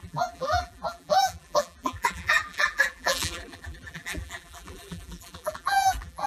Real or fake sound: fake